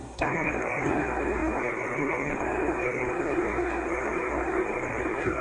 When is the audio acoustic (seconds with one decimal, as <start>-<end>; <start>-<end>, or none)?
none